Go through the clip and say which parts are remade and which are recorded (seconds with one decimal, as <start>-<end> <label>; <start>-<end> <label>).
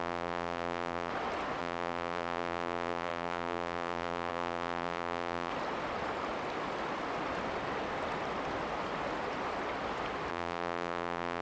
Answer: 0.0-1.1 remade; 1.1-1.6 recorded; 1.6-5.5 remade; 5.5-10.3 recorded; 10.3-11.4 remade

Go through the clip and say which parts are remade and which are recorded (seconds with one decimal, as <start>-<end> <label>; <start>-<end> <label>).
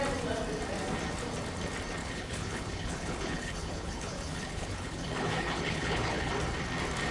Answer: 0.0-2.0 recorded; 2.0-6.3 remade; 6.3-7.1 recorded